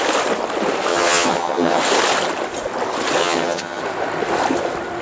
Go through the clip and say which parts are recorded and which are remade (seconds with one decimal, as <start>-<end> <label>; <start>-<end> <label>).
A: 0.0-0.9 recorded; 0.9-1.8 remade; 1.8-3.2 recorded; 3.2-3.8 remade; 3.8-5.0 recorded